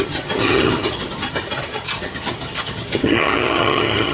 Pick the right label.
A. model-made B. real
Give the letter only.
A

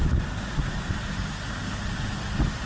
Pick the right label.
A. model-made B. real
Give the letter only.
B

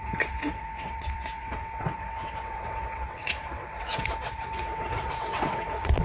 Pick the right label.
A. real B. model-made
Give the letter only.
B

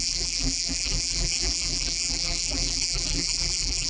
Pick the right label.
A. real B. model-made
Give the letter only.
B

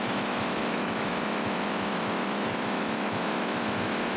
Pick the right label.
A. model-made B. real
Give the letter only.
A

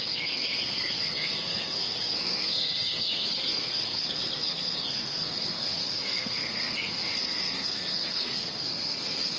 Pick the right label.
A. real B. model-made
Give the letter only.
B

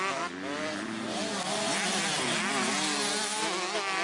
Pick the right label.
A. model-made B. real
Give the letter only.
B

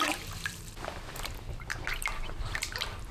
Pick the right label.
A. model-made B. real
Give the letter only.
A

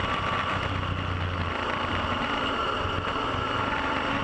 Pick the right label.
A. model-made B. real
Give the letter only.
B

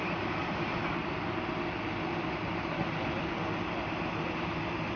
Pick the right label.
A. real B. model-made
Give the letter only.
A